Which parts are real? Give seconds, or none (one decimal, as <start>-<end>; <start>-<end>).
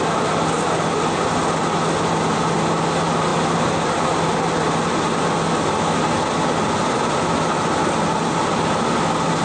0.0-9.4